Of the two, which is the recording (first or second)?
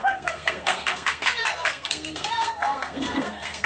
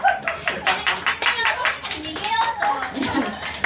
second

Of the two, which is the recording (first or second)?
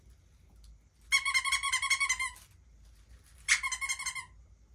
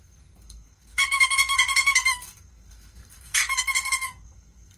first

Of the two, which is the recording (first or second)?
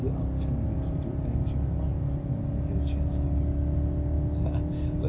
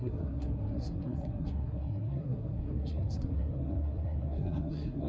first